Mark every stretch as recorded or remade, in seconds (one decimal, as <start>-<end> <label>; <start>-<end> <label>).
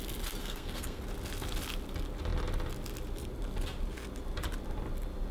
0.0-0.4 recorded; 0.4-1.0 remade; 1.0-5.3 recorded